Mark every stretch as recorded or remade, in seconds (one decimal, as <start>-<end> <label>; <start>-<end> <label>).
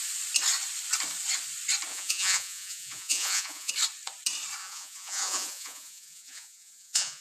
0.0-1.9 recorded; 1.9-3.7 remade; 3.7-4.6 recorded; 4.6-7.2 remade